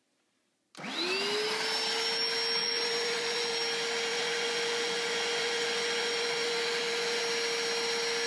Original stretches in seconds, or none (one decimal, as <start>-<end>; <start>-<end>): 0.0-2.6; 3.5-4.1; 7.2-8.3